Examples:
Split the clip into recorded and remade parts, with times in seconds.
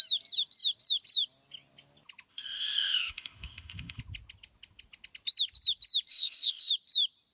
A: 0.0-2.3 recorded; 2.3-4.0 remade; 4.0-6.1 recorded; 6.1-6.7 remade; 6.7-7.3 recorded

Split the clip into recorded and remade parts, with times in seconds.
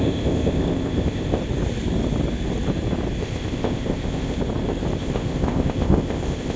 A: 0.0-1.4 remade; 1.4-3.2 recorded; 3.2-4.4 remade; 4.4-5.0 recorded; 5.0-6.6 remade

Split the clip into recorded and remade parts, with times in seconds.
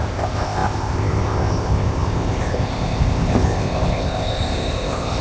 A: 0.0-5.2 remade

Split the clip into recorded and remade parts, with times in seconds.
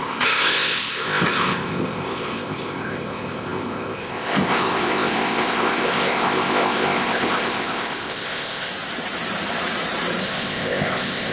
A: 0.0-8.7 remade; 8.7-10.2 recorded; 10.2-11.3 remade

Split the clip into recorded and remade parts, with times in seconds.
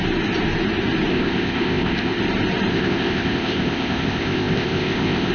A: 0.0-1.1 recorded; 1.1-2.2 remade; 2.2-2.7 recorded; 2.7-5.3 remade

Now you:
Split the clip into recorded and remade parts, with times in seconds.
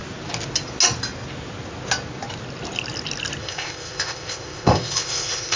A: 0.0-3.4 recorded; 3.4-5.6 remade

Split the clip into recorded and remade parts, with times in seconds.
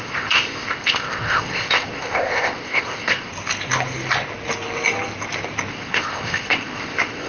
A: 0.0-3.3 remade; 3.3-5.7 recorded; 5.7-7.3 remade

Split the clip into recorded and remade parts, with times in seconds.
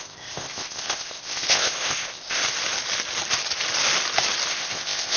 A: 0.0-2.4 remade; 2.4-4.5 recorded; 4.5-5.2 remade